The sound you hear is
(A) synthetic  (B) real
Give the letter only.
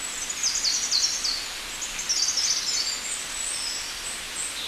B